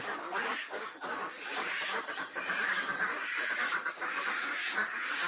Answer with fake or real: fake